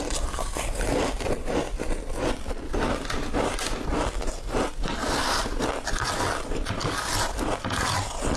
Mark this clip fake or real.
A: real